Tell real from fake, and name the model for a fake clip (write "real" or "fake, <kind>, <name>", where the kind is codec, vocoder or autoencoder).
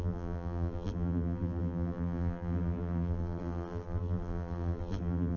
fake, vocoder, BigVGAN v2